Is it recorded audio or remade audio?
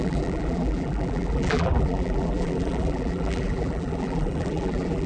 remade